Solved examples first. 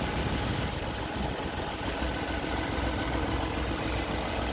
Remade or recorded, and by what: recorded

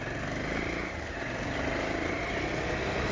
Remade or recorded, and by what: recorded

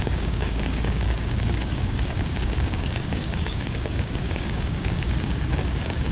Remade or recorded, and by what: remade, codec, DAC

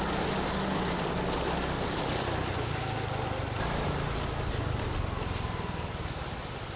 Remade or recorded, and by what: recorded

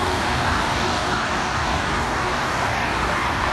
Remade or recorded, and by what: remade, codec, DAC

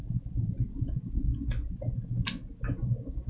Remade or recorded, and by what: recorded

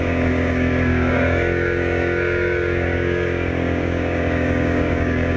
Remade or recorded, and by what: remade, codec, DAC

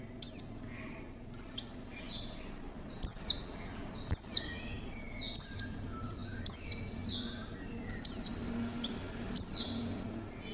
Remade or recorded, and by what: recorded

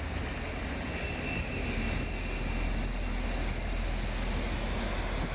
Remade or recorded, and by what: recorded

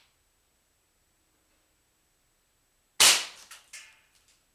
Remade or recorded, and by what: recorded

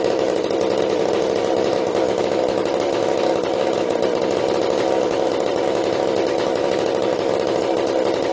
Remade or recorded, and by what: recorded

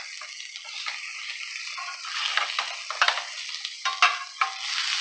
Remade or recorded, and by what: recorded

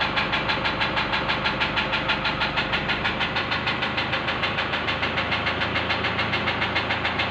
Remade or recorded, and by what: recorded